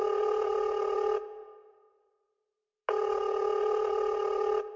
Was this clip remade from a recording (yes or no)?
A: no